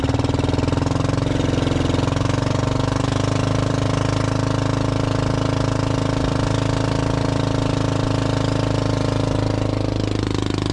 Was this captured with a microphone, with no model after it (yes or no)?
yes